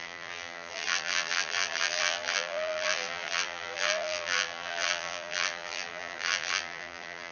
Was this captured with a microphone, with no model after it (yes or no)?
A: no